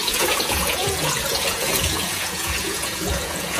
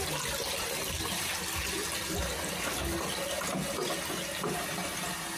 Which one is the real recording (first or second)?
second